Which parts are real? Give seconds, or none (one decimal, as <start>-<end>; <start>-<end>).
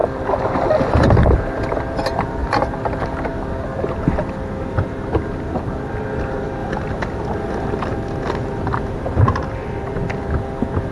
0.0-10.9